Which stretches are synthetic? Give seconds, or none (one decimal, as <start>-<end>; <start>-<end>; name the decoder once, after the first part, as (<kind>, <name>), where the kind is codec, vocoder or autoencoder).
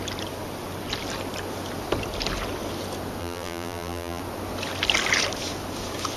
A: 3.2-4.2 (vocoder, BigVGAN v2)